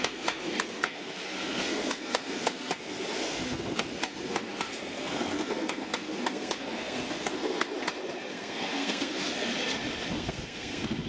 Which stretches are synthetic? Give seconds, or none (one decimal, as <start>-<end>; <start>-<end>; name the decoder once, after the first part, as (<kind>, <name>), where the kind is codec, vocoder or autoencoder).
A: 0.0-7.7 (codec, SNAC); 8.3-9.5; 10.1-11.1